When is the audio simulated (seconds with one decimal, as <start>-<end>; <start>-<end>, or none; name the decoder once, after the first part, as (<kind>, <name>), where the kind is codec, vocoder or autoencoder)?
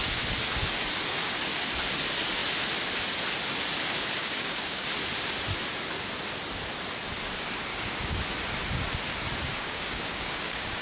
4.2-4.9 (codec, DAC); 7.7-8.2; 9.6-10.8